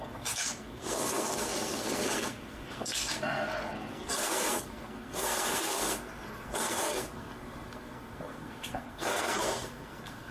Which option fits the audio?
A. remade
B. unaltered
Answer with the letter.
A